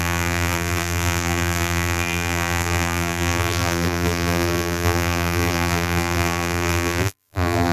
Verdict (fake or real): fake